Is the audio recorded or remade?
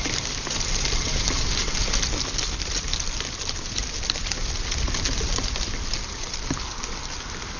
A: recorded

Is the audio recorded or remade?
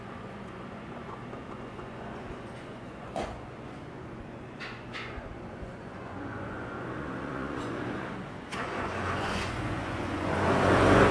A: remade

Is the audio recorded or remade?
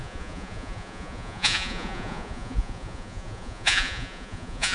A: remade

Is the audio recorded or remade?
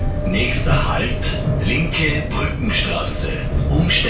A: recorded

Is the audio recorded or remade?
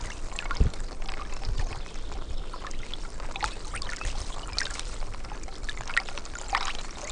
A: recorded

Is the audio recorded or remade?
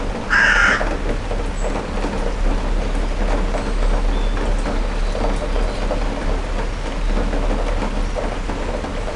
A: recorded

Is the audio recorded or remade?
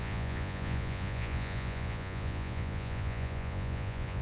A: remade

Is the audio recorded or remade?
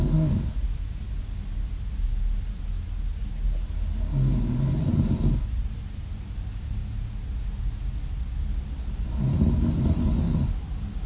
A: recorded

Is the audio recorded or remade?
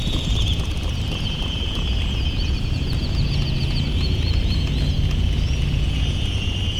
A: remade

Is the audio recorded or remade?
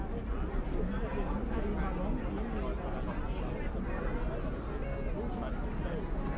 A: recorded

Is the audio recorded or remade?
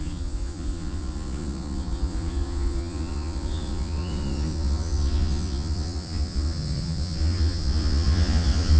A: remade